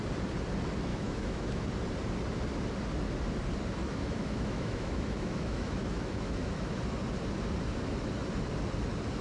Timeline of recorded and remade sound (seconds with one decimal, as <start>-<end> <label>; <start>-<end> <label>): 0.0-0.9 recorded; 0.9-1.6 remade; 1.6-3.8 recorded; 3.8-6.8 remade; 6.8-9.2 recorded